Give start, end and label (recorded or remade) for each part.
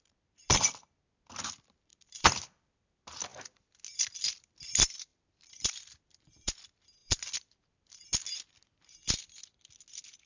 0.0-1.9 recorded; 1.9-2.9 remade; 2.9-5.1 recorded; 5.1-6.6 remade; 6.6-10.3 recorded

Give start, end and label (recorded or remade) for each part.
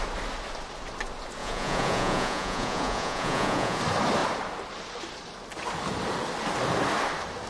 0.0-1.4 recorded; 1.4-3.8 remade; 3.8-7.5 recorded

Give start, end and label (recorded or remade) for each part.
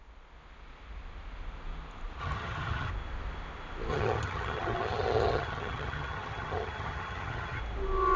0.0-2.2 recorded; 2.2-2.9 remade; 2.9-3.9 recorded; 3.9-7.6 remade; 7.6-8.2 recorded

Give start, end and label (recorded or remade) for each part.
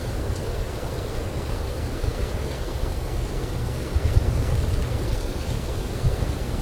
0.0-6.6 remade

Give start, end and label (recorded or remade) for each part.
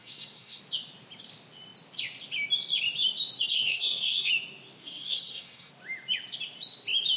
0.0-0.6 remade; 0.6-3.5 recorded; 3.5-4.3 remade; 4.3-4.8 recorded; 4.8-5.7 remade; 5.7-7.2 recorded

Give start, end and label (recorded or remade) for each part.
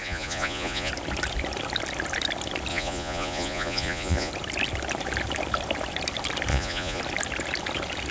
0.0-0.9 remade; 0.9-2.7 recorded; 2.7-4.3 remade; 4.3-6.5 recorded; 6.5-7.0 remade; 7.0-8.1 recorded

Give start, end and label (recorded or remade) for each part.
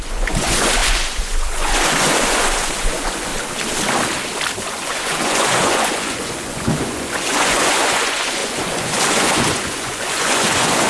0.0-3.3 remade; 3.3-4.7 recorded; 4.7-10.9 remade